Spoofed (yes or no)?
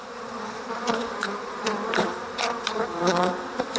yes